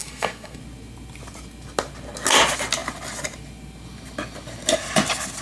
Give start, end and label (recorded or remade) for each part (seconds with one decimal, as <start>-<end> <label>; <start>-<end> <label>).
0.0-0.6 remade; 0.6-5.4 recorded

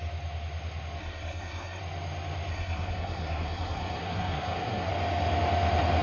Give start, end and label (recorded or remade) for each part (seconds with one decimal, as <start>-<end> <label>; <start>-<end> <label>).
0.0-1.0 recorded; 1.0-1.8 remade; 1.8-2.5 recorded; 2.5-4.9 remade; 4.9-6.0 recorded

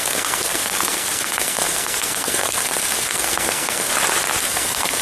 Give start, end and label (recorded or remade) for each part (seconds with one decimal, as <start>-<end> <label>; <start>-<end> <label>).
0.0-3.9 remade; 3.9-4.4 recorded; 4.4-5.0 remade